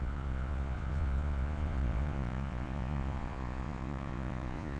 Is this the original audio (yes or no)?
no